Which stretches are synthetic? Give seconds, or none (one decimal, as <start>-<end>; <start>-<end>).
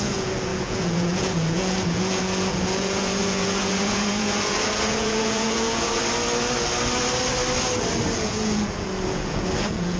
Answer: 0.0-6.0; 8.1-10.0